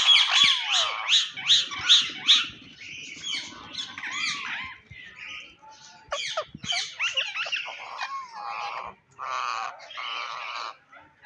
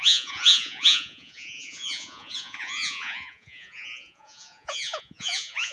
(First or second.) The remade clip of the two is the second